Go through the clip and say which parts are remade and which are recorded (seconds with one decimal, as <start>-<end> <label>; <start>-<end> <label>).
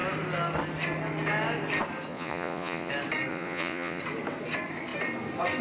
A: 0.0-2.1 recorded; 2.1-2.9 remade; 2.9-3.3 recorded; 3.3-4.0 remade; 4.0-5.6 recorded